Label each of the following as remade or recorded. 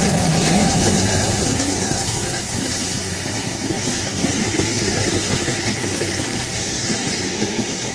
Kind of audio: remade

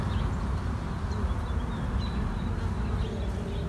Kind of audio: recorded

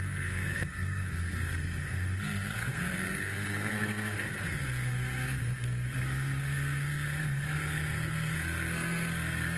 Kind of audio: remade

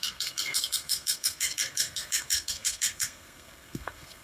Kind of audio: remade